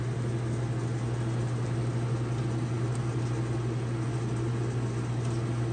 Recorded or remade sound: recorded